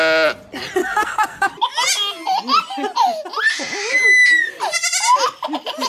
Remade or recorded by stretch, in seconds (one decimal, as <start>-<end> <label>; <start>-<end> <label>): 0.0-0.8 recorded; 0.8-1.5 remade; 1.5-5.9 recorded